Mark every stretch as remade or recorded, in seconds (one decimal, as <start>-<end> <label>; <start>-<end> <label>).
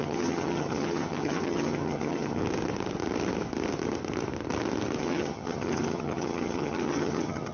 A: 0.0-2.4 remade; 2.4-5.0 recorded; 5.0-7.5 remade